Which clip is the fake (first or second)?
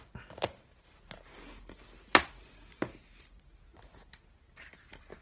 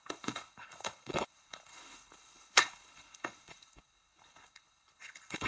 second